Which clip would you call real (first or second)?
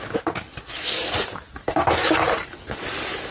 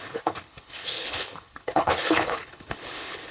first